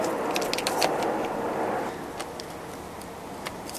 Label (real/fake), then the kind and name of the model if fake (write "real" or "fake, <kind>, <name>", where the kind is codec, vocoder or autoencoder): real